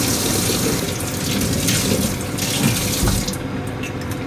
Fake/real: real